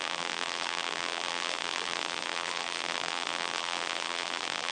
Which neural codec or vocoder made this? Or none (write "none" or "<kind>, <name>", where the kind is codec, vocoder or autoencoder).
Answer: vocoder, BigVGAN v2